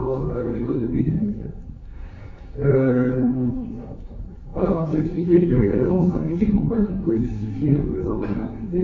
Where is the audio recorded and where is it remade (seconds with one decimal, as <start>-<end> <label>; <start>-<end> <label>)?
0.0-8.8 remade